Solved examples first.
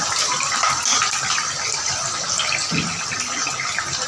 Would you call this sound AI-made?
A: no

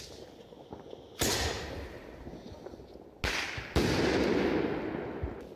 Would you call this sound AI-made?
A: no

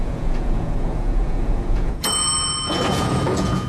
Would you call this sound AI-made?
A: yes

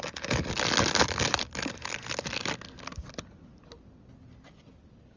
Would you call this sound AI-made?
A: no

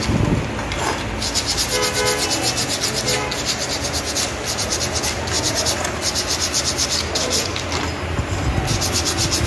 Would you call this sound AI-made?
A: no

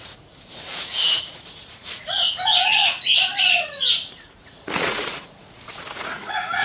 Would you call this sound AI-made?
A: yes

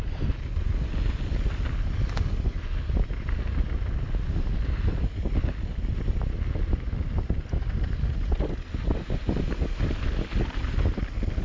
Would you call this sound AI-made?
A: no